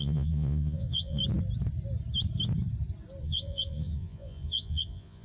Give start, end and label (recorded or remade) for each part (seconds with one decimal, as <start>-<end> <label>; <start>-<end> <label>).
0.0-1.2 remade; 1.2-3.2 recorded; 3.2-5.2 remade